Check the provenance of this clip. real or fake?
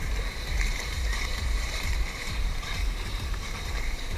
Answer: fake